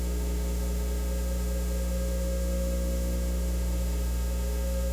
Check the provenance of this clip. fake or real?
fake